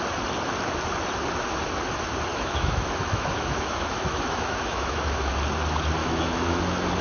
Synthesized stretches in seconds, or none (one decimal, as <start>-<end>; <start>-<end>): 2.3-5.3; 6.0-6.6